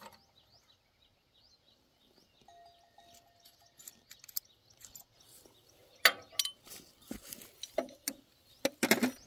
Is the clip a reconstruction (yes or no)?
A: no